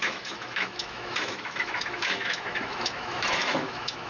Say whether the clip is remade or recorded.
remade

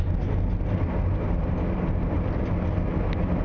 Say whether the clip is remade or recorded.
recorded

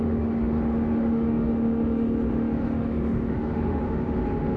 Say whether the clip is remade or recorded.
remade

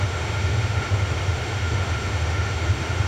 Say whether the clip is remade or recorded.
remade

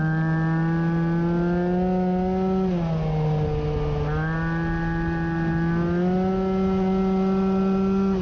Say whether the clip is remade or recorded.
recorded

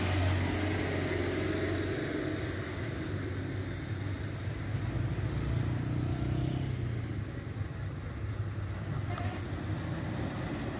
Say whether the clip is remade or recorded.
recorded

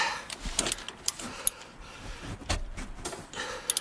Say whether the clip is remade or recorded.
recorded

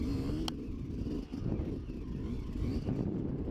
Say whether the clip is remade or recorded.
recorded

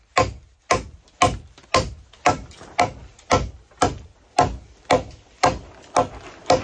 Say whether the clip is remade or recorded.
recorded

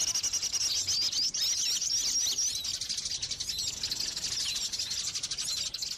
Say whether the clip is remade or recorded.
recorded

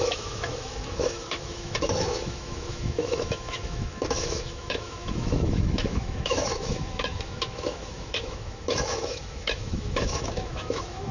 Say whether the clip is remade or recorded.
remade